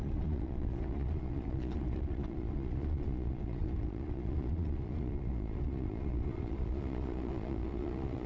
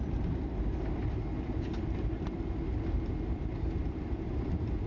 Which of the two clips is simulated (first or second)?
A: first